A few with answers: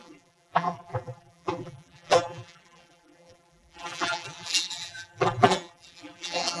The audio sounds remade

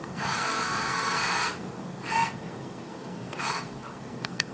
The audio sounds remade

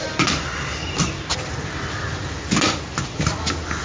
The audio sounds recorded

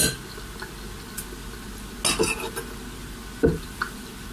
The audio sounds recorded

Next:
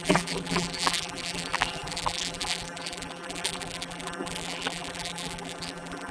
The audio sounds remade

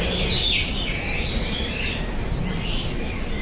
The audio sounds recorded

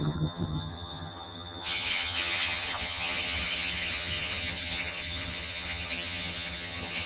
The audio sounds remade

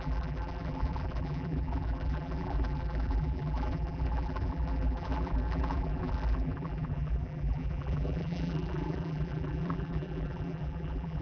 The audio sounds remade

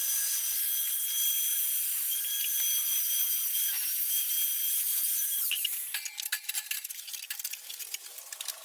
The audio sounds recorded